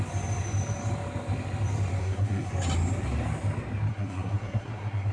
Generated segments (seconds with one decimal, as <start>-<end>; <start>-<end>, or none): 2.0-2.5; 3.9-5.1